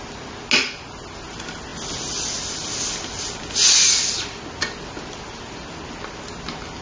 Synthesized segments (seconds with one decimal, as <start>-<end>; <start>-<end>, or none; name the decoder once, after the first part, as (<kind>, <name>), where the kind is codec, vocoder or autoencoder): none